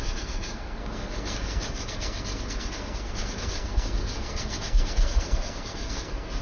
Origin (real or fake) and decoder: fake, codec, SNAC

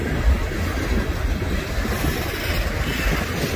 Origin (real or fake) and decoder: real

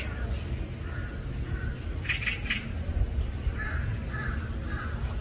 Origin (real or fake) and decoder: real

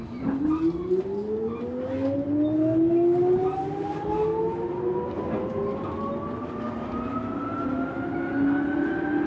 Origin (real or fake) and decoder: real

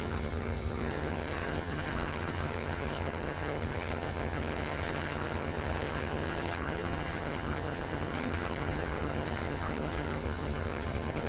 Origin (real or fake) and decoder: fake, vocoder, HiFi-GAN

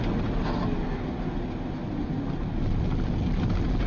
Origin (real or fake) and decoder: real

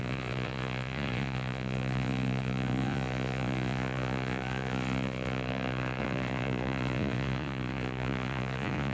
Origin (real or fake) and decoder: fake, vocoder, Vocos